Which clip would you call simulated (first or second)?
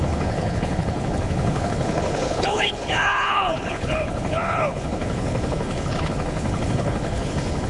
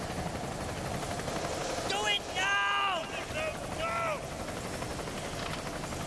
first